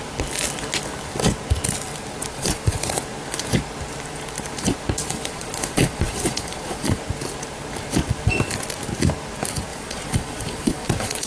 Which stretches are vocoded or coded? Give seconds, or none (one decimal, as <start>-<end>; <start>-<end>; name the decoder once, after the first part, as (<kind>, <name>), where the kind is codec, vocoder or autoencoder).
2.3-3.0 (vocoder, Vocos); 5.0-7.0; 9.7-11.3